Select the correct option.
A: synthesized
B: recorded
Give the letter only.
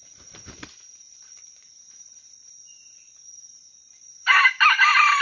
A